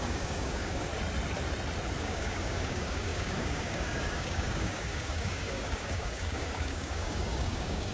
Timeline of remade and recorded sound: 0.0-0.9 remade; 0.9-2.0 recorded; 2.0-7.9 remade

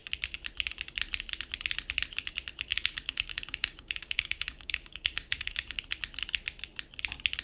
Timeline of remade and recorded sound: 0.0-2.7 recorded; 2.7-5.8 remade; 5.8-7.4 recorded